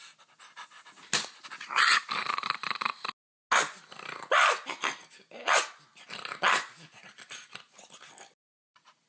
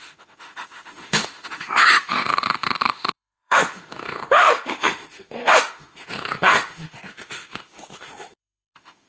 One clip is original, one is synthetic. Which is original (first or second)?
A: first